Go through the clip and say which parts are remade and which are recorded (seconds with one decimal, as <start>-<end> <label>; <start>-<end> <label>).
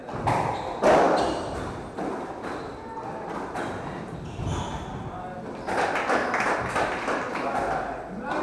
0.0-6.2 recorded; 6.2-6.7 remade; 6.7-8.4 recorded